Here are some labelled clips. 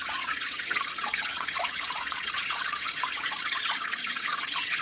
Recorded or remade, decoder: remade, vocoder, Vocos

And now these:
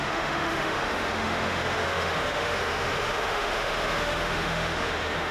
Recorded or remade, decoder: remade, autoencoder, DAC-VAE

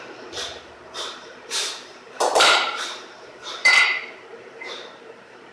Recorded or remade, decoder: remade, vocoder, BigVGAN v2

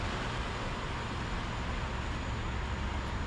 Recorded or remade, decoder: recorded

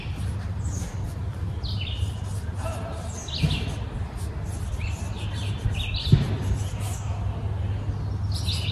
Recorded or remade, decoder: recorded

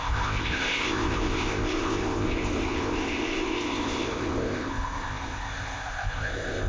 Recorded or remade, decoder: remade, codec, ZipCodec